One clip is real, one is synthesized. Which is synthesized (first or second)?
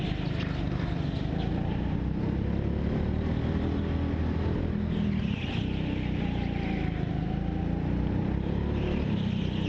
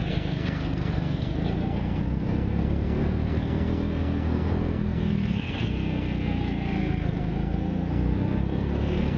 second